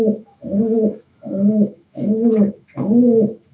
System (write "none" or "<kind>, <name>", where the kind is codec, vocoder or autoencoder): autoencoder, DAC-VAE